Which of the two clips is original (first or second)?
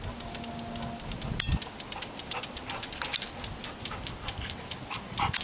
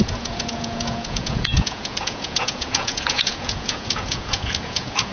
first